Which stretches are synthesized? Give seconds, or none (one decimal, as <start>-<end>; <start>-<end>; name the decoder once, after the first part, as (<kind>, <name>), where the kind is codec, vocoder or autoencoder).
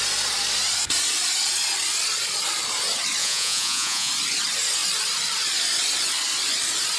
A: 3.2-4.1 (vocoder, Vocos)